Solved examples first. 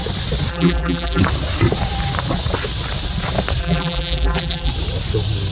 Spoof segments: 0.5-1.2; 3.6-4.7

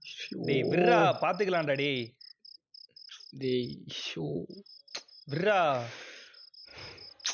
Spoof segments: none

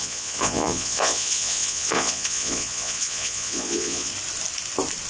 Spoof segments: 0.0-4.1

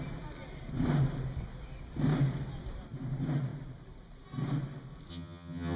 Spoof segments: 5.1-5.8